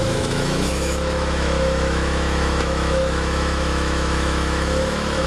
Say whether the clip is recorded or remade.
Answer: remade